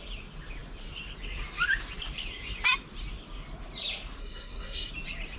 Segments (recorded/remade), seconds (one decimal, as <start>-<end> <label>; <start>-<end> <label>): 0.0-4.2 recorded; 4.2-4.9 remade; 4.9-5.4 recorded